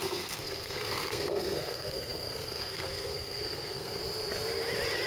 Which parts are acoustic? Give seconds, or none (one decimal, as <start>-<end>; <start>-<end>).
4.0-5.1

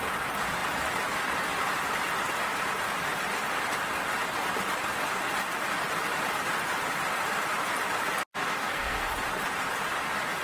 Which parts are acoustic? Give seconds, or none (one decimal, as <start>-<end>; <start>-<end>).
0.0-8.6; 9.1-10.4

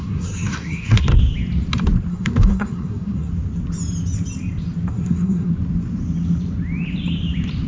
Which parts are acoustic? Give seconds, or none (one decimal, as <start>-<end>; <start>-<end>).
1.1-2.1; 3.3-4.9; 5.5-7.7

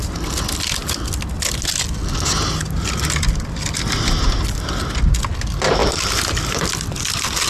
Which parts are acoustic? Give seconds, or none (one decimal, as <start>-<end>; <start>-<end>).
0.0-7.5